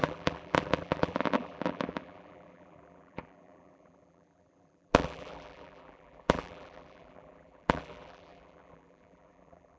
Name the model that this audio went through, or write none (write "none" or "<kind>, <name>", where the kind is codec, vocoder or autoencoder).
vocoder, BigVGAN v2